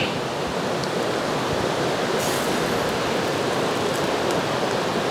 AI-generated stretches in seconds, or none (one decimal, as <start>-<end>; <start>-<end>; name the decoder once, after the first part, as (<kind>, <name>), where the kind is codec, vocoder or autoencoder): none